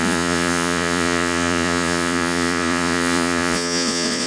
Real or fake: fake